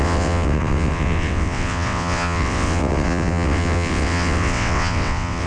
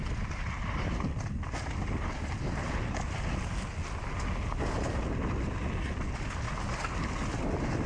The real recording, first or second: second